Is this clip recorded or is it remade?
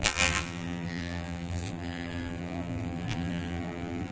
remade